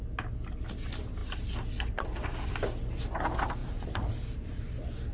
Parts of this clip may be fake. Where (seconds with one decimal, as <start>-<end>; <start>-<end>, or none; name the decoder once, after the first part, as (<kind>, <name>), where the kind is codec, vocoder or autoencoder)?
3.6-4.6 (vocoder, BigVGAN v2)